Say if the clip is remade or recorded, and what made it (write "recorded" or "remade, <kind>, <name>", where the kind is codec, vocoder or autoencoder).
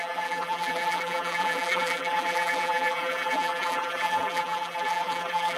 remade, vocoder, BigVGAN v2